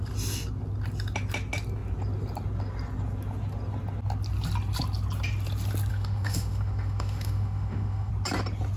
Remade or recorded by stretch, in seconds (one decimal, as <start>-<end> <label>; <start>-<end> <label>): 0.0-5.9 recorded; 5.9-8.1 remade; 8.1-8.8 recorded